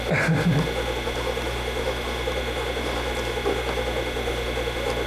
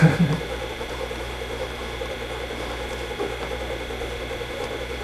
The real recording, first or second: first